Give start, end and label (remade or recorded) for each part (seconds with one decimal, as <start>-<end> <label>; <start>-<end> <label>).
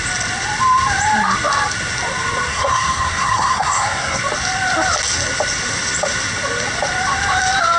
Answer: 0.0-2.5 recorded; 2.5-4.2 remade; 4.2-7.8 recorded